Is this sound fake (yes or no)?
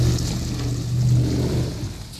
no